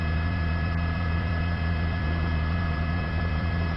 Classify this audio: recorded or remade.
remade